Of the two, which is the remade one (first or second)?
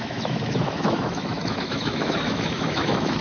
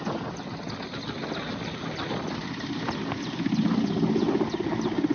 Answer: first